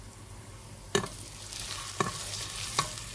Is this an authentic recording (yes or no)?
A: yes